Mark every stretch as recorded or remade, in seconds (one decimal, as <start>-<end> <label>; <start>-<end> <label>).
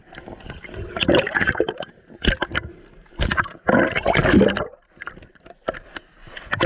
0.0-2.2 remade; 2.2-6.7 recorded